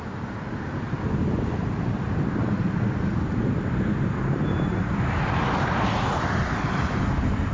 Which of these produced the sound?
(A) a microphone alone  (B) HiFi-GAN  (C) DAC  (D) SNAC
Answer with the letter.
A